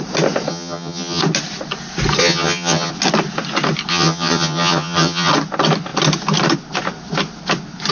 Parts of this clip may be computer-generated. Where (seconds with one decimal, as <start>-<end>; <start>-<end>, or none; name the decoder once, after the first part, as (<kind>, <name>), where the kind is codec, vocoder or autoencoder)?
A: 0.5-1.2 (vocoder, HiFi-GAN); 2.2-2.9; 3.9-5.3